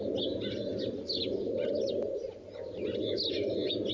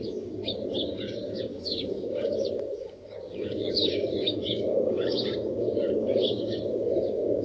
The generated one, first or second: second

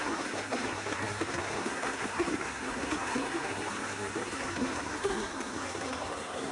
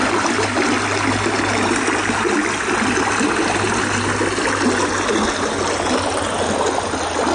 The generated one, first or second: first